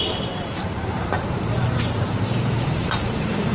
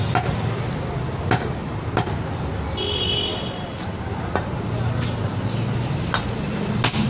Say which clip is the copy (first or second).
first